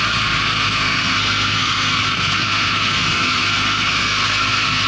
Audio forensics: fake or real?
fake